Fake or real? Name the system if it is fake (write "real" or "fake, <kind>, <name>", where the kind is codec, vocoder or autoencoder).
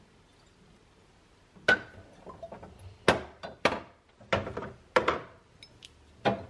real